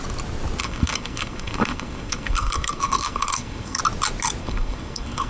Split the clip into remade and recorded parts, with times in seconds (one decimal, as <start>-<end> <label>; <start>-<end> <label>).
0.0-0.6 recorded; 0.6-3.8 remade; 3.8-4.4 recorded; 4.4-5.3 remade

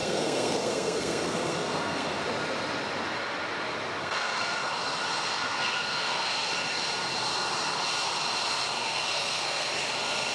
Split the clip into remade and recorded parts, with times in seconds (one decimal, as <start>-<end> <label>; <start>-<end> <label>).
0.0-2.2 remade; 2.2-4.0 recorded; 4.0-4.6 remade; 4.6-5.3 recorded; 5.3-6.5 remade; 6.5-8.8 recorded; 8.8-9.7 remade; 9.7-10.3 recorded

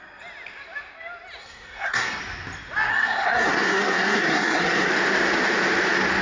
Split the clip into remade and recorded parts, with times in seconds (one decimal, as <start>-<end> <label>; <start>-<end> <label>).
0.0-1.4 recorded; 1.4-2.2 remade; 2.2-2.9 recorded; 2.9-4.9 remade; 4.9-6.2 recorded